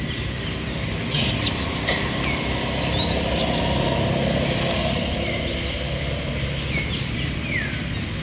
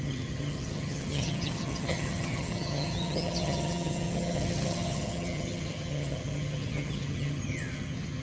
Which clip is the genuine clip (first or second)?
first